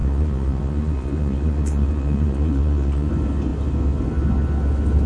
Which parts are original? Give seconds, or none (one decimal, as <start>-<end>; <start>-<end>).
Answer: 3.1-5.1